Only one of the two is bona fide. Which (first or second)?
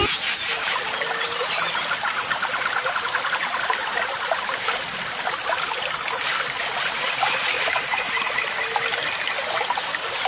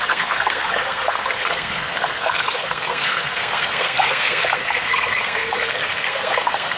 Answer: first